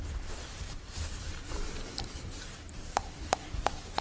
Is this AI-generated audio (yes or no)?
yes